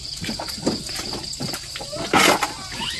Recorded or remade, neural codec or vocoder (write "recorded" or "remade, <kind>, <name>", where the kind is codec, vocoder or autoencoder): recorded